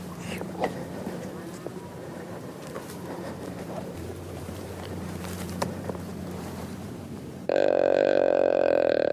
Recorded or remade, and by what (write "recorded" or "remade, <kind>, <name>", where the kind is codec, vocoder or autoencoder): remade, vocoder, BigVGAN v2